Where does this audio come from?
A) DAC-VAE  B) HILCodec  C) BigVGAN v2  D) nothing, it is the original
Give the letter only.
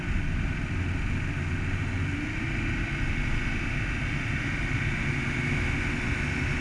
D